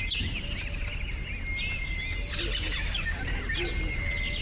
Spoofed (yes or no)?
no